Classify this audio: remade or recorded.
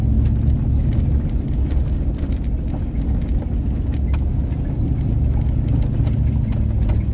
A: recorded